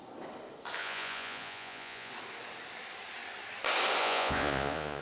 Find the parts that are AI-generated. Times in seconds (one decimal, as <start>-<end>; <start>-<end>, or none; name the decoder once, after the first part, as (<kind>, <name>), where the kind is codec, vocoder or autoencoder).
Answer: 0.8-2.1 (vocoder, Vocos); 4.0-5.0